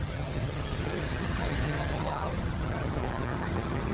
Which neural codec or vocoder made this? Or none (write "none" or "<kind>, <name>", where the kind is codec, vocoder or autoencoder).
vocoder, HiFi-GAN